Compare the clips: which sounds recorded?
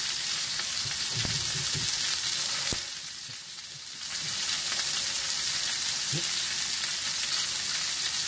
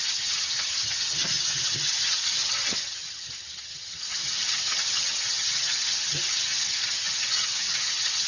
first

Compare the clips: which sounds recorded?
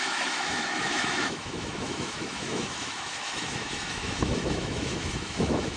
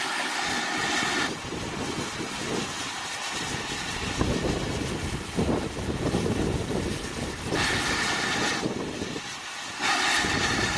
second